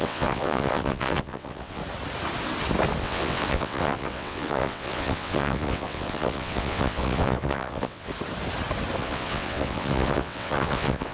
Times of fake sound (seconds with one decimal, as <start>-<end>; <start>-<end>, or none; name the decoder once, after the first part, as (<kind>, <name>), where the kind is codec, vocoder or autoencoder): 0.0-1.8 (vocoder, WaveNeXt); 3.0-8.1; 9.0-11.1